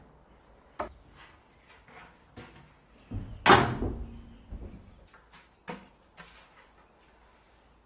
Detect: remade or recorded recorded